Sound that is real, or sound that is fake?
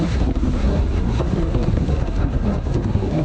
fake